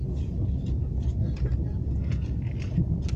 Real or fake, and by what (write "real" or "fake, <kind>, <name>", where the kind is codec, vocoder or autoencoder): real